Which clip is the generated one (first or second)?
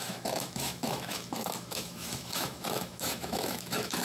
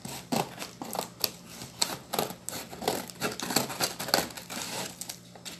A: first